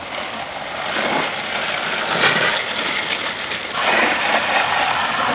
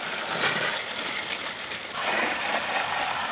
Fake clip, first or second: second